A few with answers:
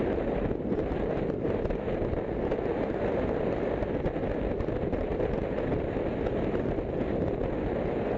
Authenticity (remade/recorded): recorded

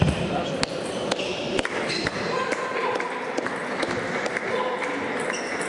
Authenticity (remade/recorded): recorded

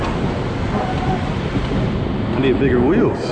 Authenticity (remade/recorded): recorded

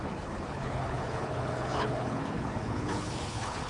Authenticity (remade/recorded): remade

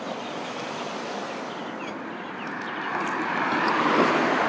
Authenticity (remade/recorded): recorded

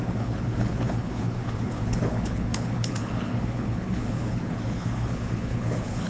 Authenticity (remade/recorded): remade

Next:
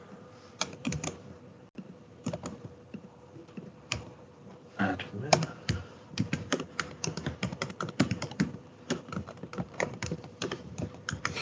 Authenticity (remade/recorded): remade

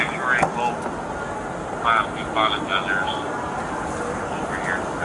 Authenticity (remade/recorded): recorded